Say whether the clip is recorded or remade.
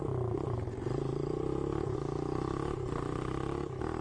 recorded